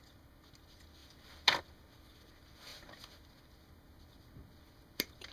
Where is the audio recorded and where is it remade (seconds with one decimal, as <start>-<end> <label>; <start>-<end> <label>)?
0.0-5.3 recorded

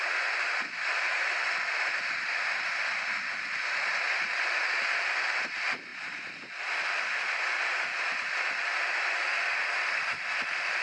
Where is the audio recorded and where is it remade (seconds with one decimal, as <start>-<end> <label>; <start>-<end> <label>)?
0.0-10.8 recorded

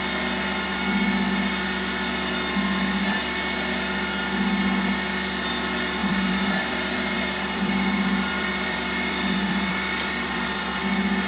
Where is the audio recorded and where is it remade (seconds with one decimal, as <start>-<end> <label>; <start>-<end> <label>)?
0.0-6.0 recorded; 6.0-10.8 remade; 10.8-11.3 recorded

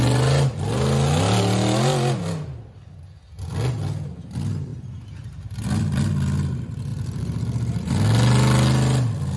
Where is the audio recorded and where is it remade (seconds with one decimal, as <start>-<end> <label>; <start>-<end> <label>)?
0.0-4.7 recorded; 4.7-6.0 remade; 6.0-6.9 recorded; 6.9-7.9 remade; 7.9-9.4 recorded